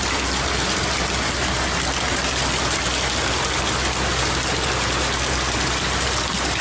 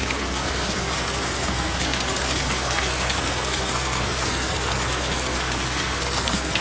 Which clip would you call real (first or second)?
first